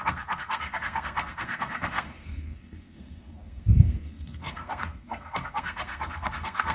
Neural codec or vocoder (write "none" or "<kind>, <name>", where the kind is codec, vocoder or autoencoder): codec, SNAC